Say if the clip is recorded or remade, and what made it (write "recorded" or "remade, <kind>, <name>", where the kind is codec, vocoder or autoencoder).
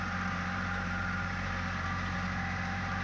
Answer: remade, vocoder, BigVGAN v2